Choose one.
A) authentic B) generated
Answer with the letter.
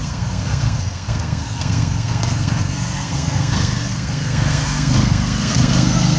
B